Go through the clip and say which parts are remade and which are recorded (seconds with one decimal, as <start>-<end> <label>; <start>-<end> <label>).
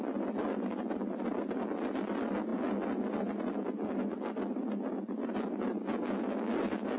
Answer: 0.0-7.0 recorded